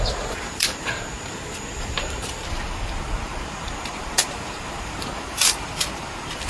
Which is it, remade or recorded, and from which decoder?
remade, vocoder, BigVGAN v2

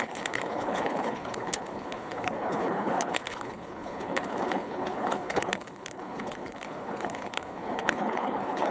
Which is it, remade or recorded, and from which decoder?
remade, codec, HILCodec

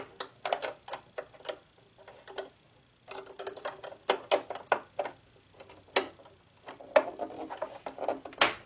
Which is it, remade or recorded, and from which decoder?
recorded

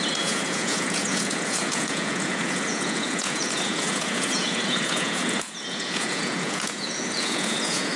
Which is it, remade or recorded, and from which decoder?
remade, vocoder, Vocos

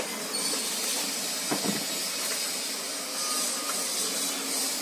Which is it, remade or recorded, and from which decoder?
recorded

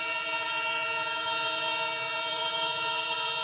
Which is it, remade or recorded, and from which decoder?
remade, vocoder, BigVGAN v2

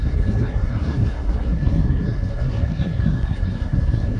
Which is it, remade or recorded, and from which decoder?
remade, codec, SNAC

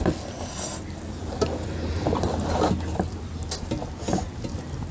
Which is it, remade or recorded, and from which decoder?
recorded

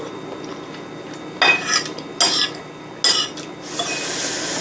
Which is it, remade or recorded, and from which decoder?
recorded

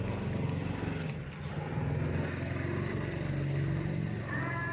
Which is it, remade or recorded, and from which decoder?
recorded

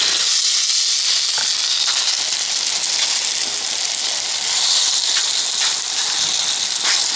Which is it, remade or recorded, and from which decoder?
recorded